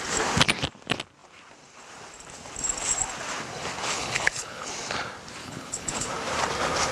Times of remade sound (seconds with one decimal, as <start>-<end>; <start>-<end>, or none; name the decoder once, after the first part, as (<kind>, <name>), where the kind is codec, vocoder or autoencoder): 3.8-4.7 (codec, HILCodec); 5.4-6.1